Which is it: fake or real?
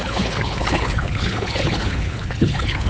fake